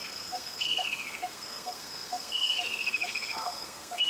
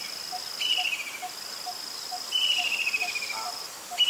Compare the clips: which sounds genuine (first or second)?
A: second